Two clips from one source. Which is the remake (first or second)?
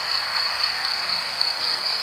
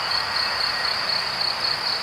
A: first